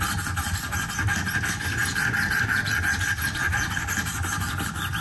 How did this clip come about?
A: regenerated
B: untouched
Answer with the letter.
B